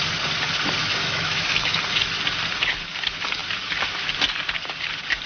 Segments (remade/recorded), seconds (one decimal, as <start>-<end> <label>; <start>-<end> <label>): 0.0-0.8 recorded; 0.8-1.8 remade; 1.8-5.3 recorded